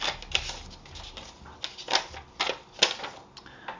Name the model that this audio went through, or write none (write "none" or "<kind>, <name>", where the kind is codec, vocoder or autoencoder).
none